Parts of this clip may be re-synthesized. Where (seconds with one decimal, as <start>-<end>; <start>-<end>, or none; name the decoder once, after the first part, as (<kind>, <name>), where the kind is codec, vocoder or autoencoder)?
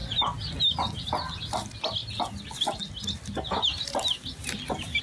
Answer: none